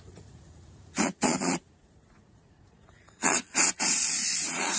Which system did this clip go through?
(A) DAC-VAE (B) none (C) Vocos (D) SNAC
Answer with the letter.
C